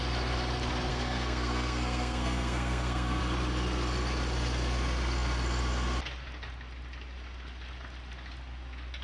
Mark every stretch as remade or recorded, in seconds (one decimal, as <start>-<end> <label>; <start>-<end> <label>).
0.0-0.9 recorded; 0.9-3.2 remade; 3.2-9.0 recorded